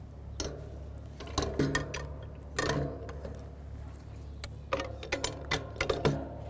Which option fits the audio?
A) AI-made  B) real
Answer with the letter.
B